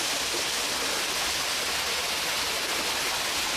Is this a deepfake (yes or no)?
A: no